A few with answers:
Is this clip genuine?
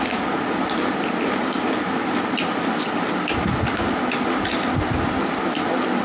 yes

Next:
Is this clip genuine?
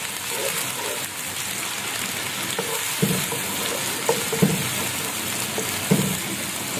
yes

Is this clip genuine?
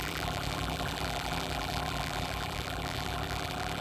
no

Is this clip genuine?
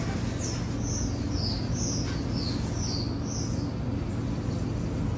yes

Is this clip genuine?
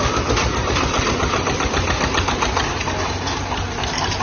yes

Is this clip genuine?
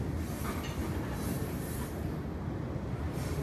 yes